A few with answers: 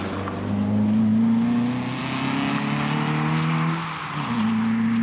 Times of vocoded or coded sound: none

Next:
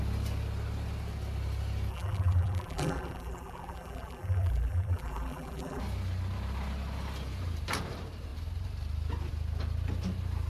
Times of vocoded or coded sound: 1.9-5.8

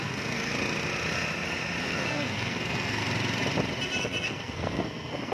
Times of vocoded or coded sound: 0.0-0.5; 1.8-3.0; 4.0-5.3